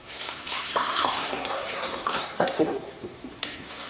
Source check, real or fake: fake